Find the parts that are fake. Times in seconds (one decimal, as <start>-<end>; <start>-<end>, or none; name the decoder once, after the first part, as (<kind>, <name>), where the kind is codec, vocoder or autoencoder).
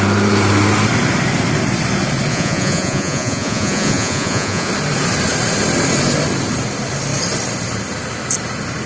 2.3-4.7 (vocoder, Vocos)